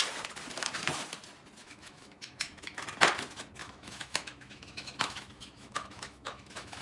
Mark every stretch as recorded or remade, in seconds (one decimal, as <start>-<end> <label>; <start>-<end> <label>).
0.0-1.6 recorded; 1.6-2.8 remade; 2.8-3.6 recorded; 3.6-6.8 remade